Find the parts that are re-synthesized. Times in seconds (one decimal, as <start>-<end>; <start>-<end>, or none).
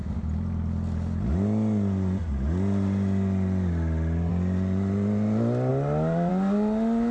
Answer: none